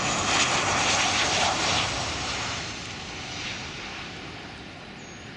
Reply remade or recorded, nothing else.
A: recorded